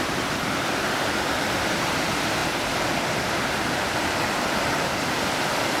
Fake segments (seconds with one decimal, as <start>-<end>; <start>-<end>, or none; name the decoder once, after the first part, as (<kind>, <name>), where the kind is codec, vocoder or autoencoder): 0.0-5.8 (vocoder, BigVGAN v2)